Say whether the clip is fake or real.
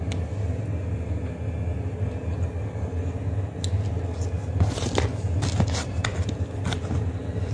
real